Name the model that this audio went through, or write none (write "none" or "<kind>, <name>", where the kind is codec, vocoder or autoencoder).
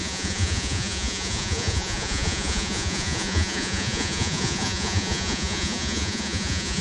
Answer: vocoder, Vocos